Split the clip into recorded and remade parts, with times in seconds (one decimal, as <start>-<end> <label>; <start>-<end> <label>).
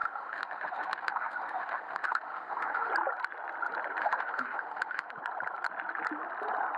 0.0-2.9 remade; 2.9-4.0 recorded; 4.0-5.1 remade; 5.1-6.8 recorded